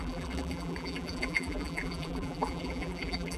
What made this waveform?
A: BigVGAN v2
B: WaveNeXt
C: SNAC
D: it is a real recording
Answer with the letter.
A